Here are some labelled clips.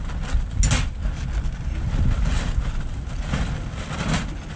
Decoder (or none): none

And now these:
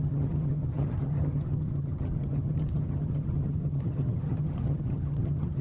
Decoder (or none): vocoder, HiFi-GAN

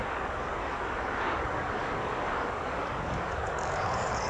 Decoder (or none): codec, DAC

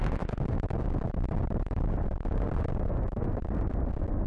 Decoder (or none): none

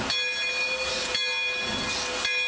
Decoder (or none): none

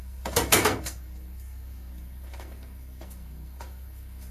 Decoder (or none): codec, SNAC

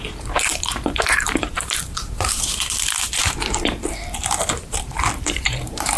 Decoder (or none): vocoder, BigVGAN v2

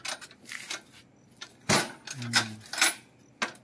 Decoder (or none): none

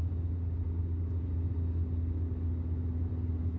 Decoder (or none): none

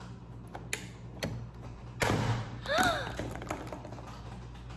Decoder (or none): none